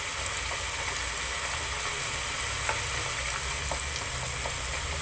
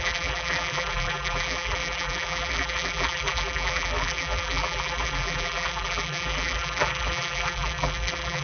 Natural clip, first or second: first